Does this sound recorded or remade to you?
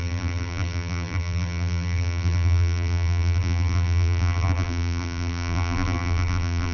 remade